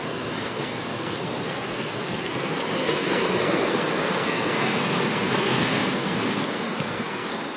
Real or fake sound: fake